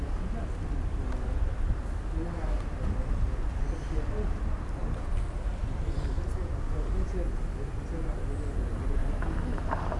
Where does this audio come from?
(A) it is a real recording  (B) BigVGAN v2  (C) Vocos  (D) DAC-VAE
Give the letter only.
A